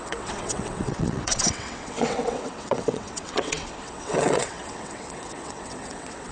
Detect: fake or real fake